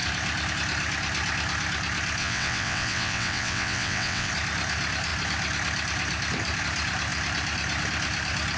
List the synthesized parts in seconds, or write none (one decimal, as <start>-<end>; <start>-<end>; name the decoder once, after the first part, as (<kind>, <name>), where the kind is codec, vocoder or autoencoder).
2.2-4.3 (vocoder, WaveNeXt)